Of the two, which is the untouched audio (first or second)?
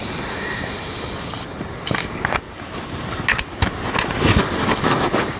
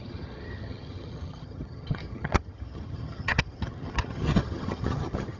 first